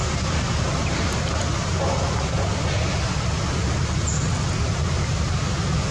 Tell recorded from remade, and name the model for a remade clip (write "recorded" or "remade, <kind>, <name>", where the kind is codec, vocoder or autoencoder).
recorded